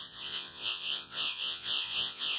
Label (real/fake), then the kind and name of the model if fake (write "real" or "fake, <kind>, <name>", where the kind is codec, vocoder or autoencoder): fake, vocoder, Vocos